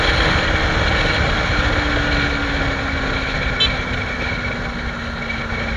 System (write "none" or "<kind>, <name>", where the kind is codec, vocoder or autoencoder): none